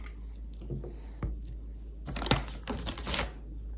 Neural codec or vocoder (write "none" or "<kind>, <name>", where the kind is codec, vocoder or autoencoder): none